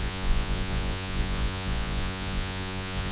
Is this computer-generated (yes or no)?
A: yes